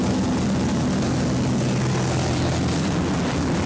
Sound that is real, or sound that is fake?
real